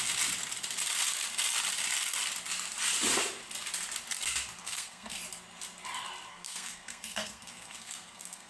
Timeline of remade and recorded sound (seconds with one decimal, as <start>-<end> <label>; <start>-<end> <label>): 0.0-4.6 recorded; 4.6-5.2 remade; 5.2-6.3 recorded; 6.3-8.5 remade